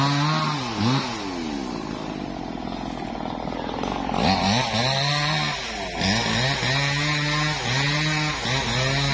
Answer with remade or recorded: recorded